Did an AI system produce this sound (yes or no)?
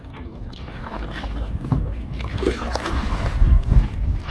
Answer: yes